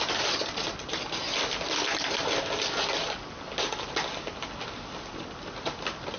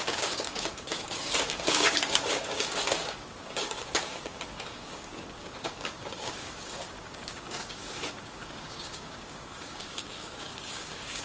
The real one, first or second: first